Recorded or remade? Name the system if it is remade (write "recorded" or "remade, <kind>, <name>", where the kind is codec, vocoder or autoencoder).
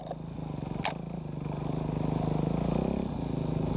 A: recorded